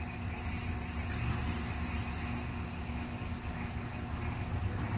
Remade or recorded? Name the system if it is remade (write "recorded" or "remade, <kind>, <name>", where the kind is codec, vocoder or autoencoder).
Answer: recorded